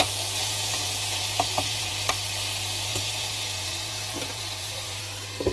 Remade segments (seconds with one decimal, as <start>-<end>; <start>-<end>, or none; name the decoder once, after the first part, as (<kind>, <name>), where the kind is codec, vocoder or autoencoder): 0.4-1.9 (vocoder, Vocos); 2.9-5.0